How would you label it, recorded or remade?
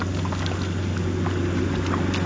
recorded